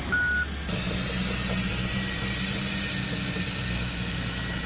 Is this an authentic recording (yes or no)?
yes